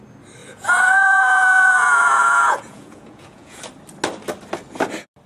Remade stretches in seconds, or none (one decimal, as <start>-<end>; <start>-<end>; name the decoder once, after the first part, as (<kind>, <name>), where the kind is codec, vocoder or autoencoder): 0.4-3.6 (vocoder, Vocos)